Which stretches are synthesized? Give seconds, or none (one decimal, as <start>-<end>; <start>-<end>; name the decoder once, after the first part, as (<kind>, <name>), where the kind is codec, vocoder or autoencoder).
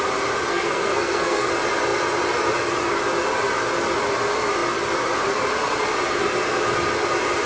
0.5-1.5 (codec, SNAC)